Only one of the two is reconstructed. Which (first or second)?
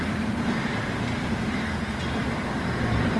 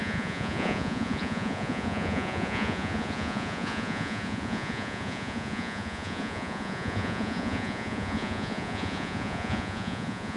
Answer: second